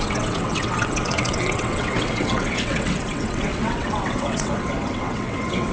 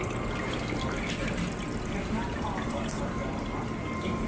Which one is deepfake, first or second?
first